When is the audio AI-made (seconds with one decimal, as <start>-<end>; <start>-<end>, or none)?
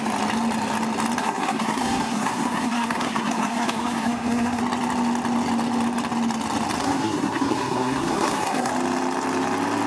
1.2-4.6; 6.8-8.7